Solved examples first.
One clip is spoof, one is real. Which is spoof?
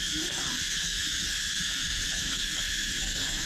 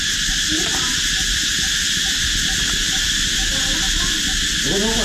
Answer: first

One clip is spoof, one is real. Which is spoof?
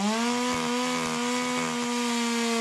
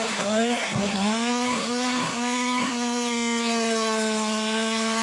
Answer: second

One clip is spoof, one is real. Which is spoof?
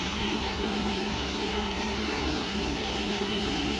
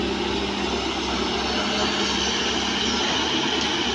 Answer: first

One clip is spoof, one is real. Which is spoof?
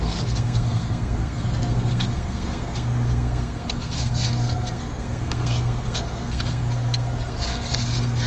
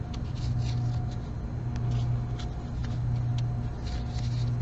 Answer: first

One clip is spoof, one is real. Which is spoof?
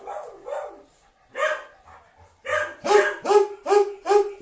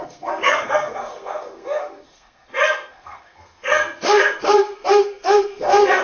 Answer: second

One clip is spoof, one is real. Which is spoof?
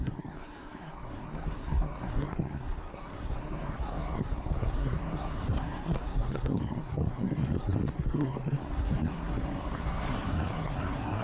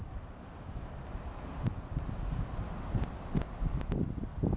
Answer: first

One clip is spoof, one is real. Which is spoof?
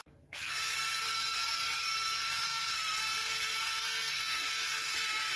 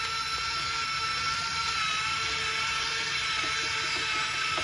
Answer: first